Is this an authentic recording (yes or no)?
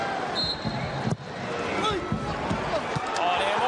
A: yes